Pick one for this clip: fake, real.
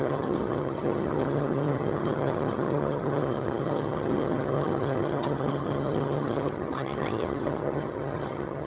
fake